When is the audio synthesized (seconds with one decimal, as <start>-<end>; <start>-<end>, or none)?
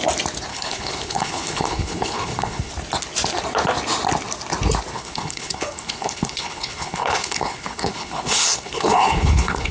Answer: 0.5-2.7; 4.9-9.7